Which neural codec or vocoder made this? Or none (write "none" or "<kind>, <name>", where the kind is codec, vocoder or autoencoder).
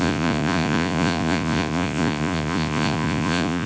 vocoder, Vocos